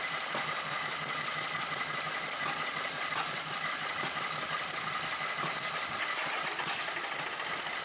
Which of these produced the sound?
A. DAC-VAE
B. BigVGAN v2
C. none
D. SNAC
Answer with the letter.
C